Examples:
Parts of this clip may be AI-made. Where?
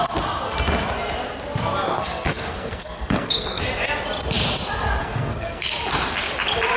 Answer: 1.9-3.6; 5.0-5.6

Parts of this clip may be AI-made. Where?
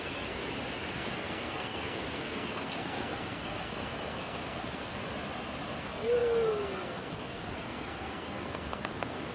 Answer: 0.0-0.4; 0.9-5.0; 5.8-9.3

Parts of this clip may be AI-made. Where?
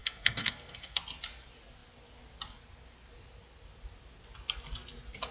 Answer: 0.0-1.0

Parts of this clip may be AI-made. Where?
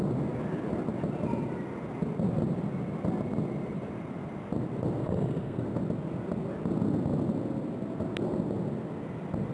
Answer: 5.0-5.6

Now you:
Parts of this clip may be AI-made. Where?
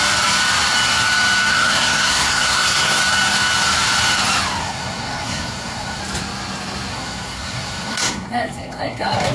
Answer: 1.5-3.0; 4.6-6.0; 6.9-9.3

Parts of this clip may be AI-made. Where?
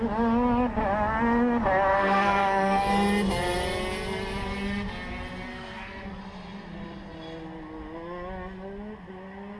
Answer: 1.9-2.9; 5.5-6.2